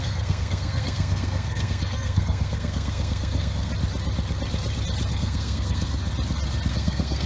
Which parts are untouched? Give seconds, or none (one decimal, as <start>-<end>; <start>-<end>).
3.7-5.1; 6.0-6.7